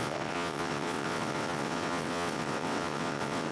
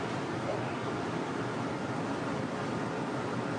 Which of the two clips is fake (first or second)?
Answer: first